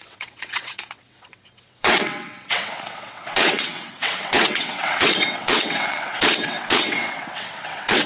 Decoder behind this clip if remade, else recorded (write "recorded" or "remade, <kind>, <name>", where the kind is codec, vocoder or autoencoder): remade, vocoder, WaveNeXt